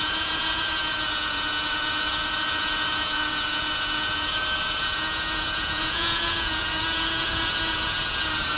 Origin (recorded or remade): remade